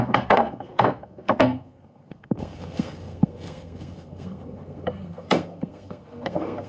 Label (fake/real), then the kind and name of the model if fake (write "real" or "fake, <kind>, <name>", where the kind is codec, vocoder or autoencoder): fake, codec, SNAC